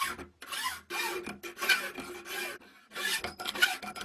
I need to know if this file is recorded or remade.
recorded